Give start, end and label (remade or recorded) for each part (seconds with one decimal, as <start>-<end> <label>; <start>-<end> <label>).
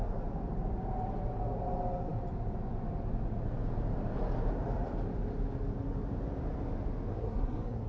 0.0-7.1 recorded; 7.1-7.9 remade